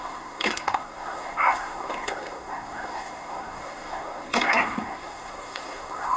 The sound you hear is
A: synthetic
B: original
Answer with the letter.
A